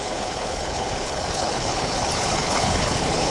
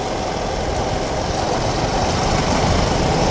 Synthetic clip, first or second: first